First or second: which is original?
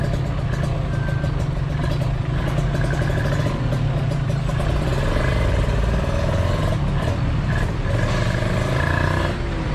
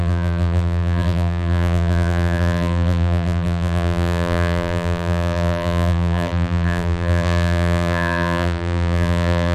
first